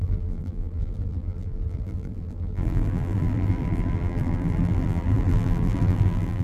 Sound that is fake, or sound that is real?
fake